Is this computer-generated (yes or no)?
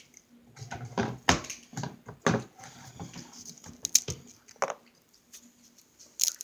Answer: no